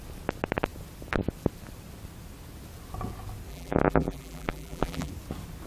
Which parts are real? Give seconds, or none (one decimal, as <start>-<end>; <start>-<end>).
0.0-3.5; 5.1-5.7